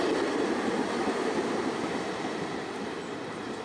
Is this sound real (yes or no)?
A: yes